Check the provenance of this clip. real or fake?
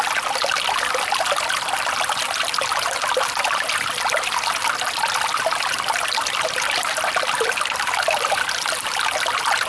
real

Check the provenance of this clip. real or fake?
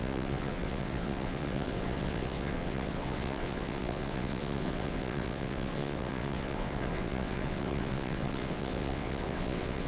fake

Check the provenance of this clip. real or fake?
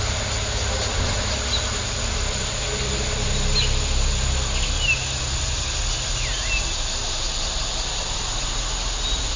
real